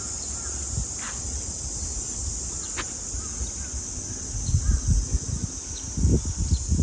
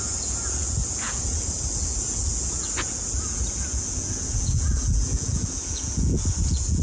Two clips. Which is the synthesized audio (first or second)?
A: second